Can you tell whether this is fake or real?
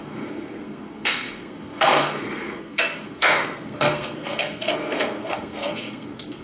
fake